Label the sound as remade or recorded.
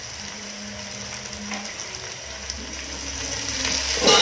recorded